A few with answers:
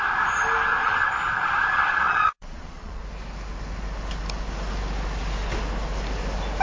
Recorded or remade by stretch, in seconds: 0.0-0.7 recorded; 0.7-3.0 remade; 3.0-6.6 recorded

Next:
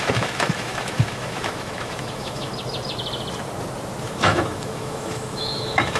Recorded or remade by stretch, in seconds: 0.0-2.5 remade; 2.5-4.0 recorded; 4.0-6.0 remade

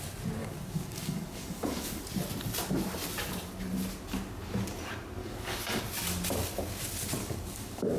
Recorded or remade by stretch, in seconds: 0.0-0.4 recorded; 0.4-2.0 remade; 2.0-5.2 recorded; 5.2-5.8 remade; 5.8-7.2 recorded; 7.2-8.0 remade

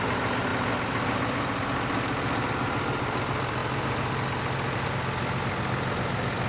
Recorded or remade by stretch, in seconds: 0.0-6.5 recorded

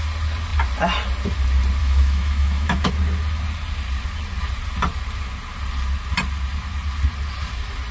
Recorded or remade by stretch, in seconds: 0.0-1.8 recorded; 1.8-2.9 remade; 2.9-7.9 recorded

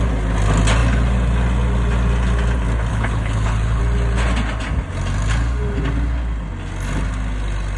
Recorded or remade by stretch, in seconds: 0.0-2.9 recorded; 2.9-3.8 remade; 3.8-7.8 recorded

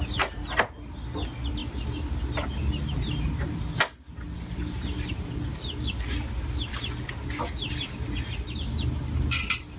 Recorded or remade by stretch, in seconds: 0.0-9.8 recorded

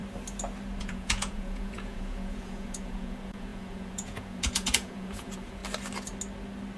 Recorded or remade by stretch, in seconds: 0.0-0.8 recorded; 0.8-5.6 remade; 5.6-6.8 recorded